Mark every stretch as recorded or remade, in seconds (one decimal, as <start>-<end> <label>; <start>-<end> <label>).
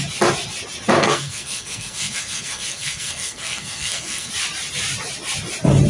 0.0-1.0 recorded; 1.0-4.3 remade; 4.3-5.9 recorded